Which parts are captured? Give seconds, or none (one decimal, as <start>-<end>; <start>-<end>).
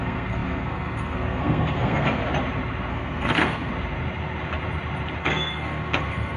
2.2-2.9; 3.7-5.2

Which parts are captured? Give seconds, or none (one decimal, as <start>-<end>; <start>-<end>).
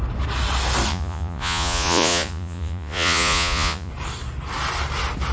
0.0-0.9; 3.9-5.3